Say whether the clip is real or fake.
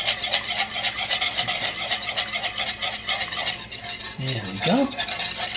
real